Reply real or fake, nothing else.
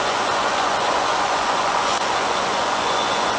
fake